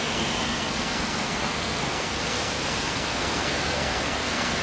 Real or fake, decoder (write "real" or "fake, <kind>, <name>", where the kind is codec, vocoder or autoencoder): fake, codec, SNAC